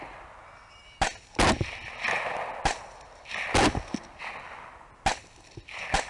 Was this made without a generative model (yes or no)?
yes